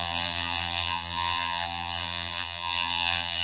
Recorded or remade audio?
remade